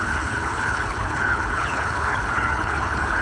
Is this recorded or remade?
remade